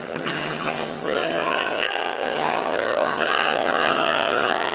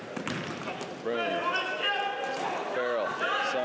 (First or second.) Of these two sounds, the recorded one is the second